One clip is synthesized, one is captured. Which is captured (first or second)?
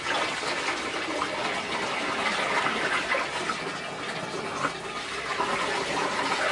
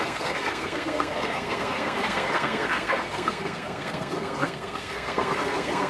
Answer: first